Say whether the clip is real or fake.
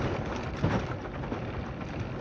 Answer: real